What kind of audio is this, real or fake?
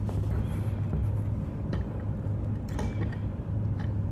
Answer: real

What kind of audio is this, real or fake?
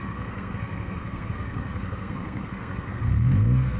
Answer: fake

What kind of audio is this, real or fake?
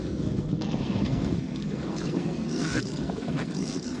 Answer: fake